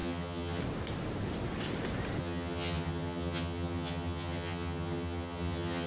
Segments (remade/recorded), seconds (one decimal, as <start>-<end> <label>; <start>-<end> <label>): 0.0-0.6 remade; 0.6-2.2 recorded; 2.2-5.9 remade